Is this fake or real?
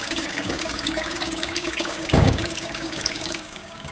fake